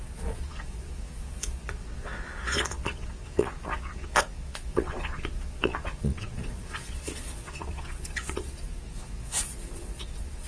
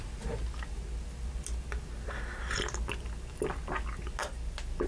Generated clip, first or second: first